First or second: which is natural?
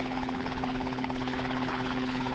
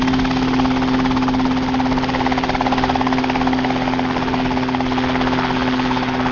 second